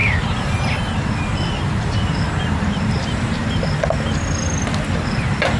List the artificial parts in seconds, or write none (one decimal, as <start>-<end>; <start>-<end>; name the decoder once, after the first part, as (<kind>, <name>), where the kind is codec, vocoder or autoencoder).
0.0-3.4 (vocoder, BigVGAN v2); 5.0-5.6